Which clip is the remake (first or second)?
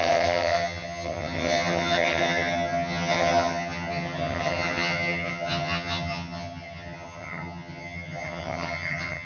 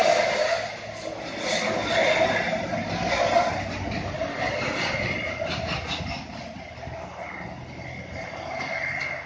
first